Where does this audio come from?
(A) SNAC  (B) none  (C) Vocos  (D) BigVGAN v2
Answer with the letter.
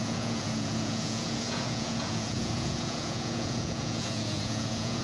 C